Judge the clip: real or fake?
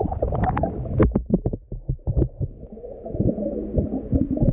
real